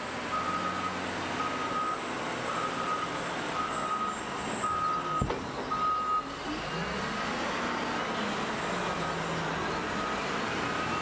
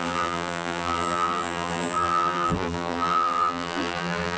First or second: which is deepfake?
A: second